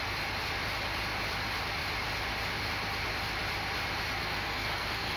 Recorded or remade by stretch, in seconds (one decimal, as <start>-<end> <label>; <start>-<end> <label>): 0.0-4.2 recorded; 4.2-5.2 remade